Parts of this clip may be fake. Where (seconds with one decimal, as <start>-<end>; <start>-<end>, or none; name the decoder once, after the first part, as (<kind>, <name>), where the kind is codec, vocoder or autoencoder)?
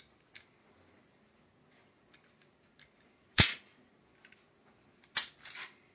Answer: 3.3-4.0 (vocoder, Vocos)